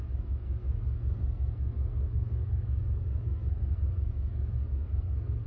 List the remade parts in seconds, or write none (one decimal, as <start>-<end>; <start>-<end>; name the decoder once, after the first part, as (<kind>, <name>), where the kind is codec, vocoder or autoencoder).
0.0-5.5 (codec, SNAC)